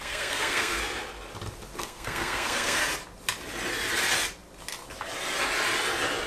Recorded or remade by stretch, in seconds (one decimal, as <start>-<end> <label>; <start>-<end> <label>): 0.0-0.8 remade; 0.8-1.8 recorded; 1.8-2.8 remade; 2.8-6.3 recorded